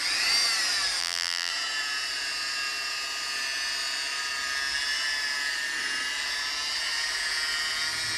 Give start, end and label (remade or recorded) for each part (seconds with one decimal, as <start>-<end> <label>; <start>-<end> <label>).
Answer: 0.0-1.0 recorded; 1.0-1.5 remade; 1.5-8.2 recorded